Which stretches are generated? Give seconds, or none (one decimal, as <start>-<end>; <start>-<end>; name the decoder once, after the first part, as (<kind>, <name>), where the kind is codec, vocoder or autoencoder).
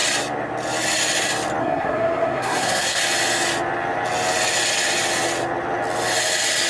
1.6-3.0 (codec, SNAC)